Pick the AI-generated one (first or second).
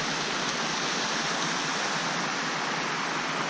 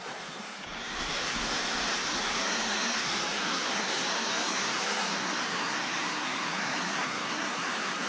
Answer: second